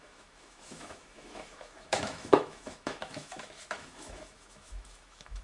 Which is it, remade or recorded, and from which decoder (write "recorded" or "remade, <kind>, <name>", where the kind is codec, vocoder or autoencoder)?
remade, autoencoder, DAC-VAE